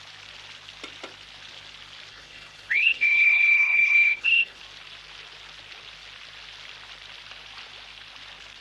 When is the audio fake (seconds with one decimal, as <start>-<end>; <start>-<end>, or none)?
2.1-4.6